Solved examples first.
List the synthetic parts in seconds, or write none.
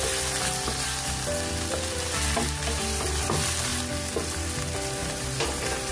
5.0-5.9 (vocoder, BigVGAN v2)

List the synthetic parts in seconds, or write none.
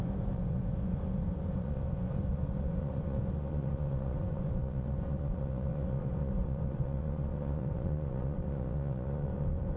0.0-9.8 (vocoder, Vocos)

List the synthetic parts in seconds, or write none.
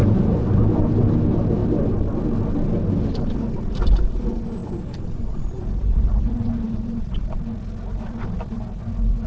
0.0-0.6 (vocoder, BigVGAN v2); 4.6-7.2